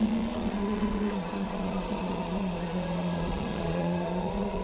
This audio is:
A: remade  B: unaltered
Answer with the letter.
A